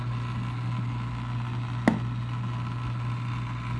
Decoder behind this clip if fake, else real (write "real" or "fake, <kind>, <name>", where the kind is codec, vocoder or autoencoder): real